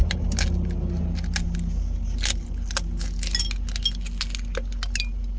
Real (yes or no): yes